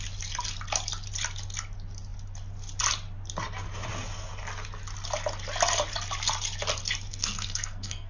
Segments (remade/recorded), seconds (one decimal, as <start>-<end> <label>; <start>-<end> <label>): 0.0-7.1 recorded; 7.1-8.1 remade

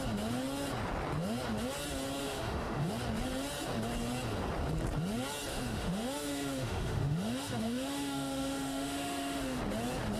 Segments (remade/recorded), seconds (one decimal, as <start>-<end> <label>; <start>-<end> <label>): 0.0-2.2 recorded; 2.2-2.9 remade; 2.9-5.5 recorded; 5.5-9.6 remade; 9.6-10.2 recorded

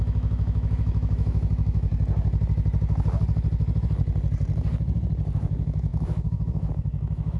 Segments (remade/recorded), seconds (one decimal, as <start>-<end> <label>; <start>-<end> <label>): 0.0-1.9 remade; 1.9-5.4 recorded; 5.4-7.4 remade

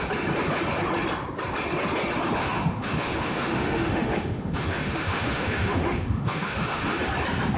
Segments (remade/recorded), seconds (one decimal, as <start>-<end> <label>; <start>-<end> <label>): 0.0-2.4 recorded; 2.4-7.0 remade; 7.0-7.6 recorded

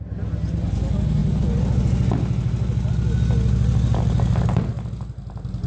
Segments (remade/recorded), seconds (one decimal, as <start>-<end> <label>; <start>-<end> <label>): 0.0-5.7 recorded

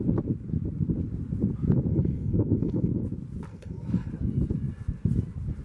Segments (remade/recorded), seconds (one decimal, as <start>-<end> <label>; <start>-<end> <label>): 0.0-1.9 recorded; 1.9-2.9 remade; 2.9-3.5 recorded; 3.5-4.1 remade; 4.1-5.6 recorded